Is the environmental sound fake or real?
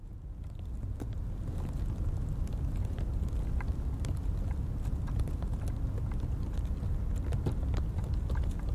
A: real